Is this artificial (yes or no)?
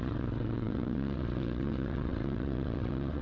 yes